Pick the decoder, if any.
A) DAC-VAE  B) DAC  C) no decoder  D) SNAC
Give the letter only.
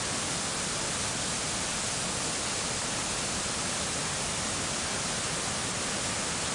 C